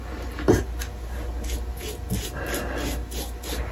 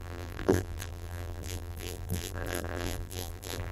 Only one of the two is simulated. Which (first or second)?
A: second